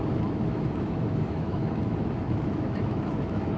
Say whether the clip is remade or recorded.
remade